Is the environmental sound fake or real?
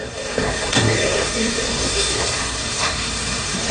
fake